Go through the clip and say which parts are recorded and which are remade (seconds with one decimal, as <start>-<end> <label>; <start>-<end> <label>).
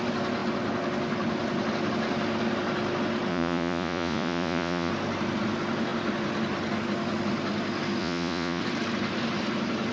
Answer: 0.0-3.3 recorded; 3.3-4.9 remade; 4.9-8.0 recorded; 8.0-8.6 remade; 8.6-9.9 recorded